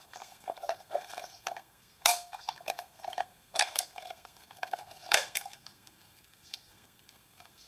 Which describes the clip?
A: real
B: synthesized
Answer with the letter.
B